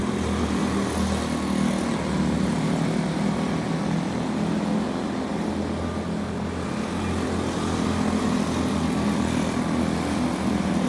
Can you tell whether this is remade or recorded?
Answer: recorded